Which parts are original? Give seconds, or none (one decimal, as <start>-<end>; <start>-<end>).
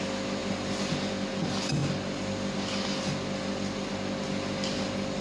0.0-5.2